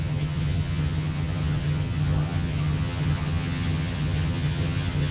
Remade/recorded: remade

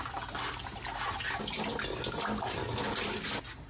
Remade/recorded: recorded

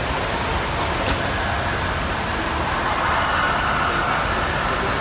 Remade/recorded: recorded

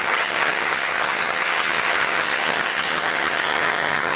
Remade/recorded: remade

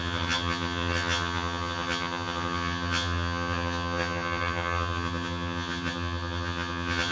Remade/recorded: remade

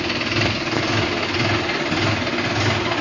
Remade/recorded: recorded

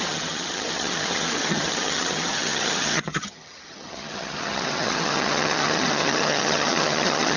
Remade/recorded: remade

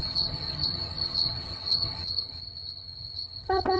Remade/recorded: remade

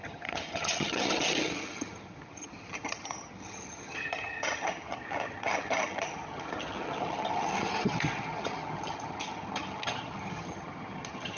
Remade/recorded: remade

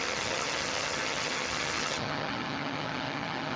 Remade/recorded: remade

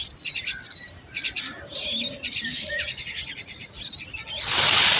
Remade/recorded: recorded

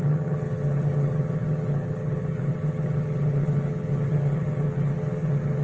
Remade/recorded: remade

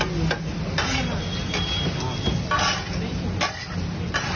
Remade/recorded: recorded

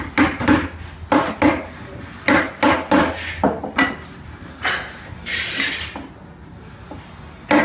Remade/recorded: recorded